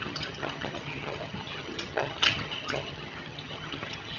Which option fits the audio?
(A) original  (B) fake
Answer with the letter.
B